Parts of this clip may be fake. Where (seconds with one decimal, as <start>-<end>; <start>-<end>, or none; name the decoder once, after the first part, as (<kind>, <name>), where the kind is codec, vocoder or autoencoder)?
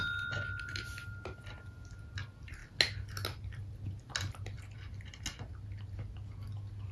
none